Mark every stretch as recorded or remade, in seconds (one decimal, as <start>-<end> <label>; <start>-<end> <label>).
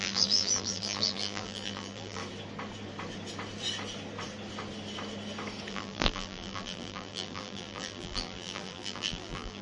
0.0-2.2 remade; 2.2-5.7 recorded; 5.7-9.6 remade